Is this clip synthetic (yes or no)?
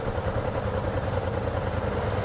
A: no